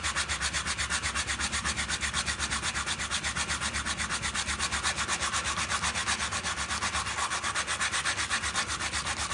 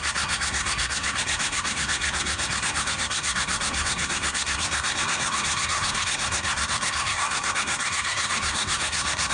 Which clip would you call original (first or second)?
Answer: first